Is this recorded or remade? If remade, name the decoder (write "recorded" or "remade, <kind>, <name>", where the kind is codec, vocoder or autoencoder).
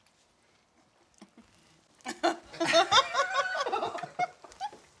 recorded